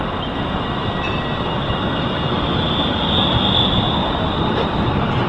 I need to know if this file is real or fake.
real